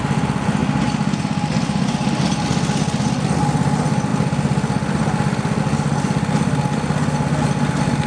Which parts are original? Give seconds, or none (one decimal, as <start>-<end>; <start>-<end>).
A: 0.0-8.1